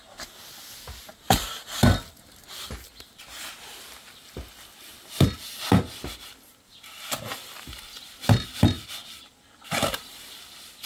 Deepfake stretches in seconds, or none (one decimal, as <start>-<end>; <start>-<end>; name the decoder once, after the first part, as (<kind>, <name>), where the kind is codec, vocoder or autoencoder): none